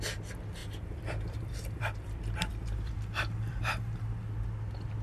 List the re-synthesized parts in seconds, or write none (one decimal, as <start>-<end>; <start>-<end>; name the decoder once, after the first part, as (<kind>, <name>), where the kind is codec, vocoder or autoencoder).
0.6-3.6 (vocoder, BigVGAN v2)